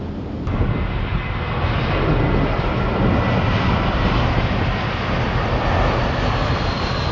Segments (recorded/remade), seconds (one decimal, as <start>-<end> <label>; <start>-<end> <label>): 0.0-7.1 recorded